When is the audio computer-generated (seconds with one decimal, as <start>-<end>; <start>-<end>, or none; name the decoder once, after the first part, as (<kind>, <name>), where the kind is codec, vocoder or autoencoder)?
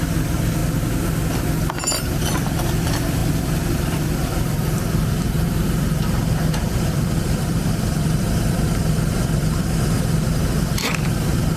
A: 0.0-0.6 (vocoder, BigVGAN v2); 1.4-11.6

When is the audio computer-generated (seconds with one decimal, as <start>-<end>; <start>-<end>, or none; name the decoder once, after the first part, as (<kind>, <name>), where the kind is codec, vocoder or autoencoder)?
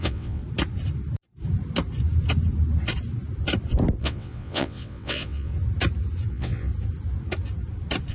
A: 0.0-0.4 (vocoder, WaveNeXt); 4.0-5.5; 6.3-6.7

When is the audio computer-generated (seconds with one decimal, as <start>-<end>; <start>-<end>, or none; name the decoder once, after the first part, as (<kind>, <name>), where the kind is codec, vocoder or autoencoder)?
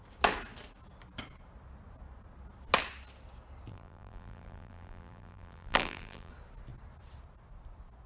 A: 3.7-6.3 (vocoder, BigVGAN v2)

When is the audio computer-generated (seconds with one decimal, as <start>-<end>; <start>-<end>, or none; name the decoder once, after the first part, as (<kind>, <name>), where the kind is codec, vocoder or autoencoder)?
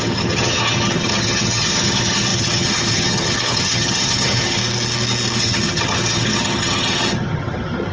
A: 0.0-4.6 (vocoder, HiFi-GAN); 5.4-7.9